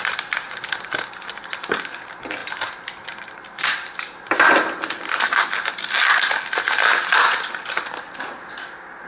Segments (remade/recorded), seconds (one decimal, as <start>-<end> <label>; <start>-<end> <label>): 0.0-9.1 recorded